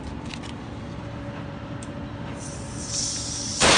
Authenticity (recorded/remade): remade